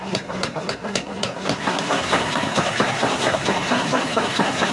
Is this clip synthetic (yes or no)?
yes